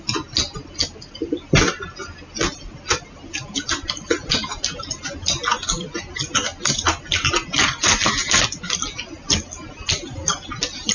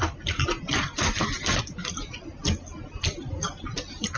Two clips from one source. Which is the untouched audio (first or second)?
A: first